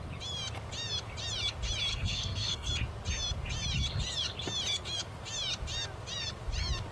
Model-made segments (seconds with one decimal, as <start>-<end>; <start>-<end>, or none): 1.9-2.7

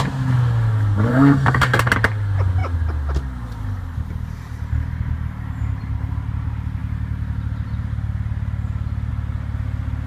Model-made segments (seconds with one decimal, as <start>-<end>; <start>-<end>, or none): 1.1-1.9

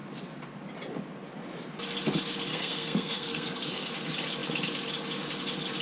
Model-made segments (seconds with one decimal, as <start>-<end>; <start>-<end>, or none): 2.5-3.9